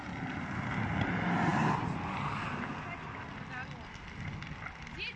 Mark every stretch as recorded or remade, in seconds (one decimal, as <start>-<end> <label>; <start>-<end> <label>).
0.0-5.2 recorded

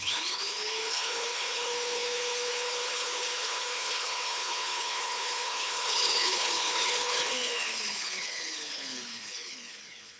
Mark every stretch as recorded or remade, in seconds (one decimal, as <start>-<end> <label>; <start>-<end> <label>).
0.0-10.2 remade

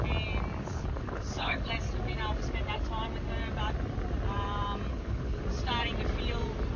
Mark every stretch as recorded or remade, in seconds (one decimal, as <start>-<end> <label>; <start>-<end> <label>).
0.0-0.7 recorded; 0.7-1.7 remade; 1.7-4.9 recorded; 4.9-5.4 remade; 5.4-6.8 recorded

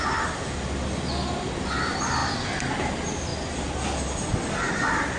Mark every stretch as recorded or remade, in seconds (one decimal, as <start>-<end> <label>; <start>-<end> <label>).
0.0-5.2 recorded

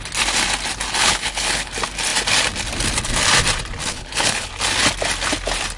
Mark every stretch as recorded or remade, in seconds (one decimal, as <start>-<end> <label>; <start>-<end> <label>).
0.0-1.0 recorded; 1.0-1.7 remade; 1.7-3.9 recorded; 3.9-4.5 remade; 4.5-5.8 recorded